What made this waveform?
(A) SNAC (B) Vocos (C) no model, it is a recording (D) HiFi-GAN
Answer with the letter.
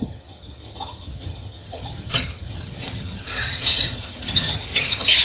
D